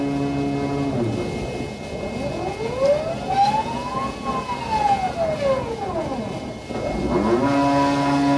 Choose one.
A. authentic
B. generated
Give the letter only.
A